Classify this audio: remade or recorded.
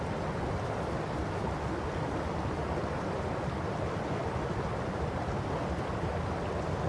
recorded